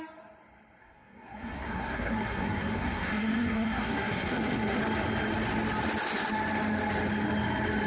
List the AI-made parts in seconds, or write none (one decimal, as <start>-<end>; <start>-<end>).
0.8-4.8